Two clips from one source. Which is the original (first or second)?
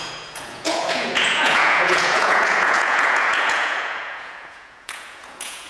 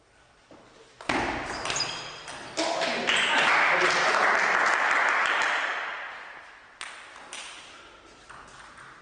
second